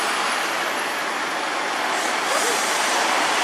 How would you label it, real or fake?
real